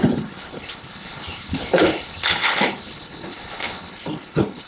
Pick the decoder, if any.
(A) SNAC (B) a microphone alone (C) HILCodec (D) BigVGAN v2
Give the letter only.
C